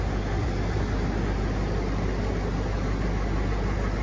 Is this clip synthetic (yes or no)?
no